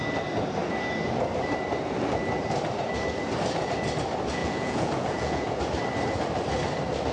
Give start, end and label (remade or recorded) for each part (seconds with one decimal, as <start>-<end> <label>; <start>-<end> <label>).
0.0-4.4 recorded; 4.4-5.6 remade; 5.6-7.1 recorded